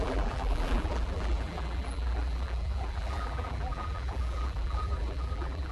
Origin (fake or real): fake